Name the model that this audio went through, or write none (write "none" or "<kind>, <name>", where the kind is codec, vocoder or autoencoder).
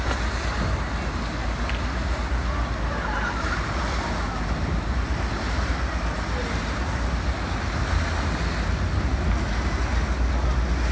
none